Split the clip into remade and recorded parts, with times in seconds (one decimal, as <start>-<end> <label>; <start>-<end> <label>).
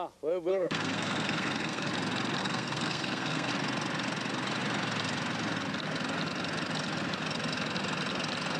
0.0-0.5 recorded; 0.5-1.9 remade; 1.9-2.4 recorded; 2.4-3.5 remade; 3.5-8.6 recorded